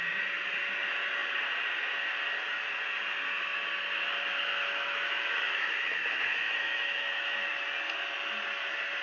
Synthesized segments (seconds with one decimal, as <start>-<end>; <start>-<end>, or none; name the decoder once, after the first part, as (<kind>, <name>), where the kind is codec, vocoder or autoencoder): 4.3-7.5 (autoencoder, DAC-VAE)